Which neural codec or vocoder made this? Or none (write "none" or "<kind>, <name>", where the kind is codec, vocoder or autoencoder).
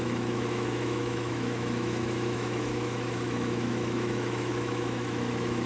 autoencoder, DAC-VAE